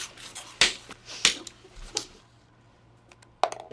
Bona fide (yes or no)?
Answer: yes